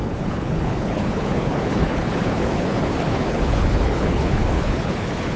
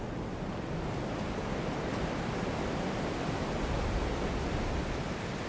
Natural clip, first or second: second